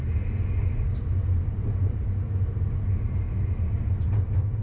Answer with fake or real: real